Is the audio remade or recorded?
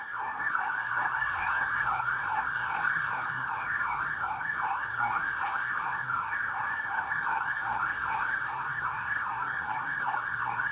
remade